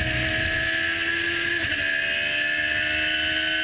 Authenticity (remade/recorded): recorded